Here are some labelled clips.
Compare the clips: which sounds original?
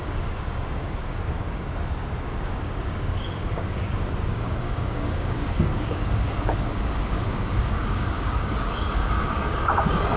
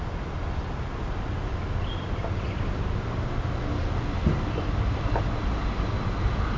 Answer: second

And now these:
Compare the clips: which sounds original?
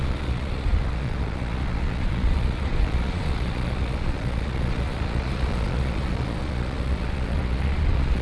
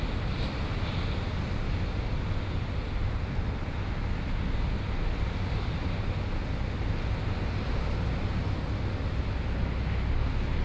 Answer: second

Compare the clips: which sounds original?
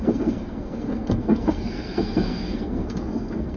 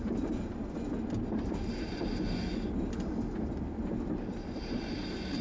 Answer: second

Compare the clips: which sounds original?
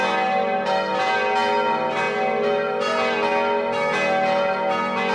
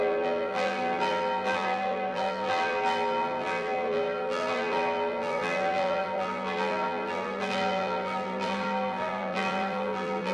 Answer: first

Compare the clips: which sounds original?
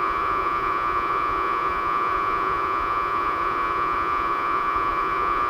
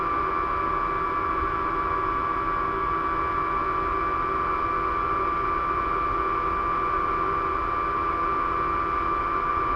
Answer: second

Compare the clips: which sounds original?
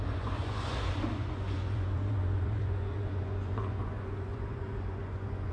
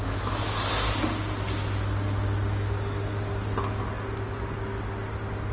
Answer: second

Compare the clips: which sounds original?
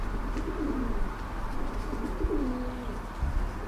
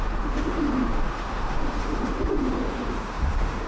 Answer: first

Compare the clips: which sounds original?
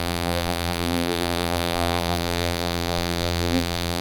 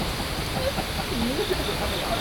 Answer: second